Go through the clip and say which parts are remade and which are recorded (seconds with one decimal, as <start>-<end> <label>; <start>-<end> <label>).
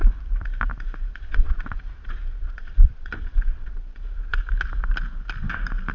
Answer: 0.0-1.1 recorded; 1.1-4.4 remade; 4.4-5.9 recorded